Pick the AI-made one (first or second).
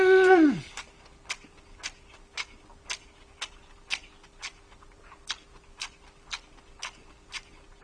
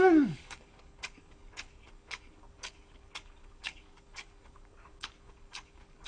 second